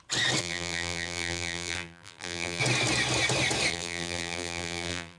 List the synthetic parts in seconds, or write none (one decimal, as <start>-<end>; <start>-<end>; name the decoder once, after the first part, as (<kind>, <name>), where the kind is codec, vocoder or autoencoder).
0.4-2.6 (vocoder, BigVGAN v2); 3.7-5.2